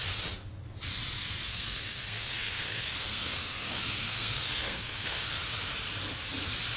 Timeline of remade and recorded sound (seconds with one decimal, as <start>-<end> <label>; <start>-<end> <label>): 0.0-1.5 recorded; 1.5-5.6 remade; 5.6-6.8 recorded